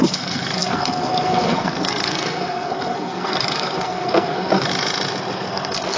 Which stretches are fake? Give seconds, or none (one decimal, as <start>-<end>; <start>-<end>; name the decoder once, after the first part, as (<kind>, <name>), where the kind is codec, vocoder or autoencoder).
0.0-4.7 (codec, SNAC); 5.5-6.0